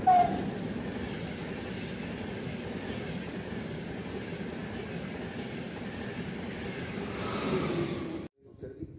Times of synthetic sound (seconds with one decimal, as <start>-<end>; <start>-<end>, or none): 4.6-7.7